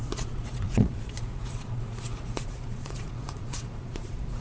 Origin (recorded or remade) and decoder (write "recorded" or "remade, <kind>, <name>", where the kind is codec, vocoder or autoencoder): remade, vocoder, Vocos